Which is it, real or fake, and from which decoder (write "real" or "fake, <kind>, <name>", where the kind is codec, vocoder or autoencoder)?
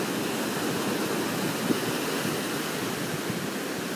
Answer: real